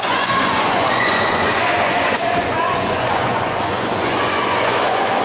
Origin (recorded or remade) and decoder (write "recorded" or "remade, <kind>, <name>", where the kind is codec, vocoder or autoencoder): remade, vocoder, Vocos